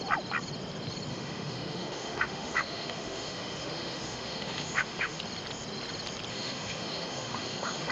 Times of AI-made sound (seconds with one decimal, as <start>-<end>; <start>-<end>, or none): 1.1-5.2; 6.3-7.9